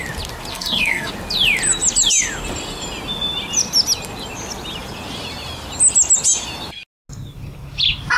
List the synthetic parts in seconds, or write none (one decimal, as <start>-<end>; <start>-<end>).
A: 0.5-1.1